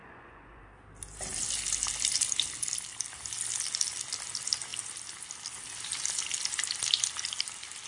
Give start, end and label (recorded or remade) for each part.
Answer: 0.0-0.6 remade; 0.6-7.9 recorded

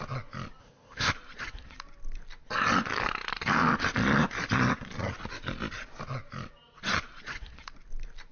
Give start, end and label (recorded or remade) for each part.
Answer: 0.0-0.6 recorded; 0.6-1.1 remade; 1.1-8.3 recorded

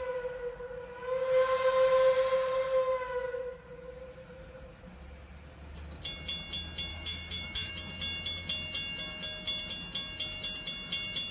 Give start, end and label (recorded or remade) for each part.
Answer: 0.0-6.9 recorded; 6.9-7.7 remade; 7.7-11.3 recorded

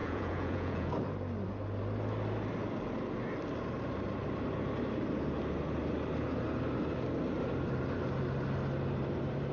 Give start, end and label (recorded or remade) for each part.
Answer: 0.0-0.9 remade; 0.9-9.5 recorded

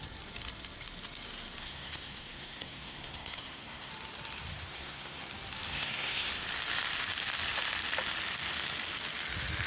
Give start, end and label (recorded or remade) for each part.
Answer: 0.0-1.6 recorded; 1.6-3.9 remade; 3.9-4.5 recorded; 4.5-5.2 remade; 5.2-5.7 recorded; 5.7-6.3 remade; 6.3-9.7 recorded

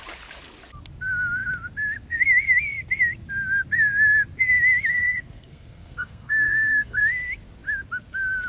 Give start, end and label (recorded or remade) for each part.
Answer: 0.0-4.9 recorded; 4.9-7.0 remade; 7.0-8.5 recorded